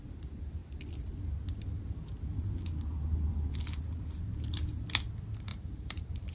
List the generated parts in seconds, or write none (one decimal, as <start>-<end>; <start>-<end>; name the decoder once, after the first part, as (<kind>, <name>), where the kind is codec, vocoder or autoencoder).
5.5-6.3 (vocoder, BigVGAN v2)